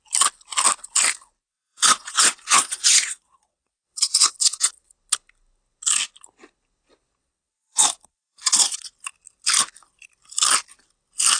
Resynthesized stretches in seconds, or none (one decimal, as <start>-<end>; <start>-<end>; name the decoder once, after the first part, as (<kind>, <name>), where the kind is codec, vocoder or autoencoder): 1.5-4.9 (vocoder, Vocos); 7.2-8.9